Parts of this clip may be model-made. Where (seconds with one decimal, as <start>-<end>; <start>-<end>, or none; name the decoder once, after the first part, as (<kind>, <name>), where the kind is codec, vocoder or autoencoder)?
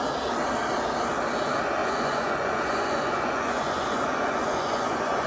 1.8-5.3 (vocoder, Vocos)